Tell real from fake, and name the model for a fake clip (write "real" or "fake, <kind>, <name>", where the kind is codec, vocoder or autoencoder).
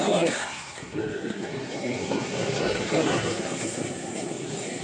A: fake, codec, SNAC